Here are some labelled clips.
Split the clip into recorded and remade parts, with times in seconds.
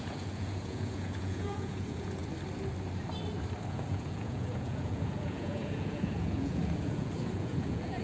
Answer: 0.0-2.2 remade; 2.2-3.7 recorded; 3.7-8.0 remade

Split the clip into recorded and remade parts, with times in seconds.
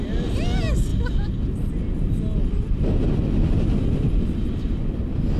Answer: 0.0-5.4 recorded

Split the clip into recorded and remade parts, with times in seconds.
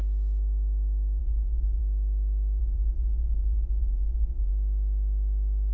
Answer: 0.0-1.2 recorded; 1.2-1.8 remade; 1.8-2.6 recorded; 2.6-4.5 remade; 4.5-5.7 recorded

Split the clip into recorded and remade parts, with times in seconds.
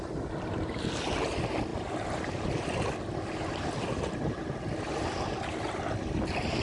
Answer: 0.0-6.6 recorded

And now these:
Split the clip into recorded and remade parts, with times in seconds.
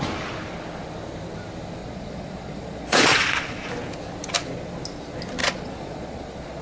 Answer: 0.0-1.8 recorded; 1.8-3.7 remade; 3.7-5.4 recorded; 5.4-6.6 remade